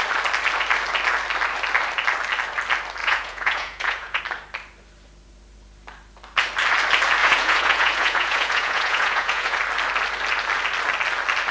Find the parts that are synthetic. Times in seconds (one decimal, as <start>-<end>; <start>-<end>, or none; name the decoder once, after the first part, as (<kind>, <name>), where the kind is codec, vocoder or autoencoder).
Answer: 3.0-4.2 (vocoder, Vocos); 7.2-9.6

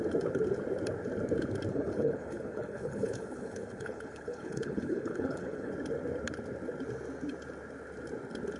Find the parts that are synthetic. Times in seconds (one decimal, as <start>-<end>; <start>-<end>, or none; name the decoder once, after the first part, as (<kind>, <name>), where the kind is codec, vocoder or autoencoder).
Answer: 1.7-5.7 (codec, HILCodec)

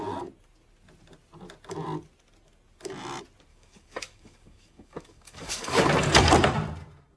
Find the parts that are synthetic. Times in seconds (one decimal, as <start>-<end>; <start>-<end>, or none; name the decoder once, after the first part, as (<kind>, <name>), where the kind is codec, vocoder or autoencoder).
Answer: 3.5-5.8 (codec, DAC)

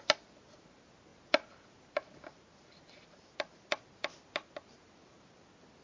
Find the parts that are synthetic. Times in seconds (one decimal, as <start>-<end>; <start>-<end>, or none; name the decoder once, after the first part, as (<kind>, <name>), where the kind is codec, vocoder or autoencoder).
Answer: none